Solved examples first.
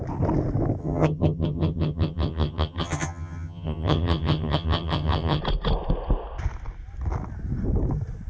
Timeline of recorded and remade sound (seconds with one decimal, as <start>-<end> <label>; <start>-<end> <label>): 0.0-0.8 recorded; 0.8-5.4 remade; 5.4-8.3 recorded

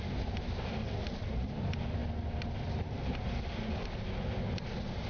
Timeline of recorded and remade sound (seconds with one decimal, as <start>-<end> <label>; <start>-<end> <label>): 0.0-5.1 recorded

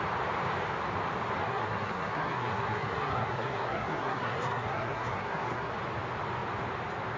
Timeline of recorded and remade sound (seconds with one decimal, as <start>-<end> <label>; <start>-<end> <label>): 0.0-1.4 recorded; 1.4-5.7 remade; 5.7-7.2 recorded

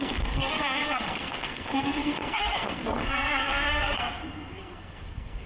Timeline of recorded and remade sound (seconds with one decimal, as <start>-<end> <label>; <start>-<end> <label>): 0.0-5.5 remade

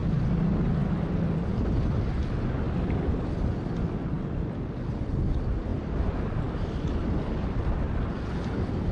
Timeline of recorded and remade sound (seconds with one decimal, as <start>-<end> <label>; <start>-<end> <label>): 0.0-8.9 recorded

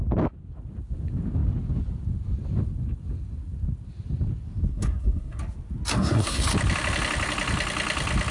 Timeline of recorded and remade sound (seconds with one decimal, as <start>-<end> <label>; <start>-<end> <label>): 0.0-4.7 recorded; 4.7-5.4 remade; 5.4-5.9 recorded; 5.9-6.4 remade; 6.4-8.3 recorded

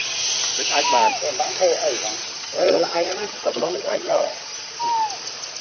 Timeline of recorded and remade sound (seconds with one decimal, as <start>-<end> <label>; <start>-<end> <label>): 0.0-2.2 recorded; 2.2-4.7 remade; 4.7-5.6 recorded

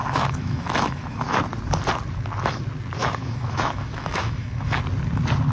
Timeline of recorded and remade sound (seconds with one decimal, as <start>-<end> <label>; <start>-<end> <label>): 0.0-1.4 remade; 1.4-3.0 recorded; 3.0-4.8 remade; 4.8-5.5 recorded